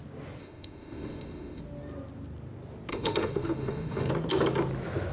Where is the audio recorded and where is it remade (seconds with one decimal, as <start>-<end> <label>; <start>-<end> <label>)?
0.0-0.4 recorded; 0.4-1.6 remade; 1.6-2.9 recorded; 2.9-4.1 remade; 4.1-5.1 recorded